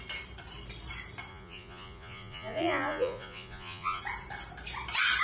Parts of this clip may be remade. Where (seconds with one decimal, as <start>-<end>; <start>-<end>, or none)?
1.3-4.0

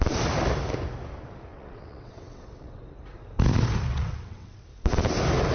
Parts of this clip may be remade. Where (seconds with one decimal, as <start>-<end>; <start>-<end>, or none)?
1.5-2.8; 3.9-4.6

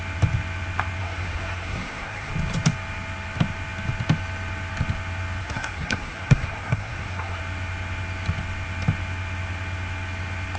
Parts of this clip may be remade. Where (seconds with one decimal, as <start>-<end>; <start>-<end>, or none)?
1.0-2.3; 5.4-7.4

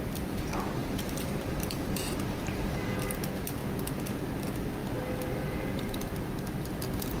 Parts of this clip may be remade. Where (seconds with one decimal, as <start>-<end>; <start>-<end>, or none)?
0.8-2.8; 3.6-4.2

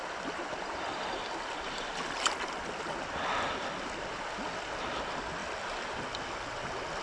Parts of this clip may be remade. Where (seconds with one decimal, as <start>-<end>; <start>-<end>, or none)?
none

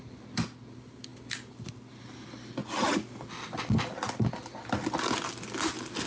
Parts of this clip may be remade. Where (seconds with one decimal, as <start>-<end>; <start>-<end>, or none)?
none

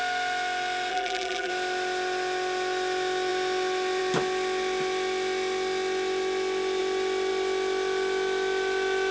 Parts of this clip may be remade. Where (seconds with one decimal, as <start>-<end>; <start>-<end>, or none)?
0.9-1.5